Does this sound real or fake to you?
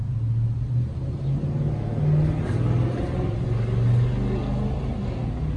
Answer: real